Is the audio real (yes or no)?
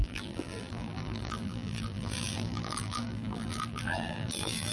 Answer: no